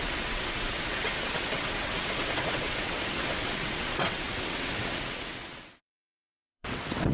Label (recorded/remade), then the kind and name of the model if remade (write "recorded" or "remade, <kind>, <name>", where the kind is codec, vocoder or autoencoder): remade, vocoder, WaveNeXt